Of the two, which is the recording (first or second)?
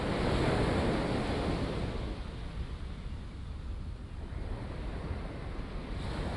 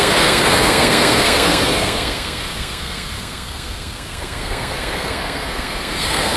first